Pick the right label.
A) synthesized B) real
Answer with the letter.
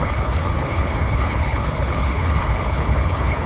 A